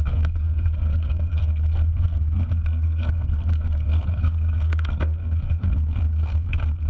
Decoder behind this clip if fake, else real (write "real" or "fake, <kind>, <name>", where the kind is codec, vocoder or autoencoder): fake, codec, SNAC